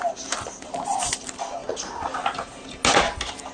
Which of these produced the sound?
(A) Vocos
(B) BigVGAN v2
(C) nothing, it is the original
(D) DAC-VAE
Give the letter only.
C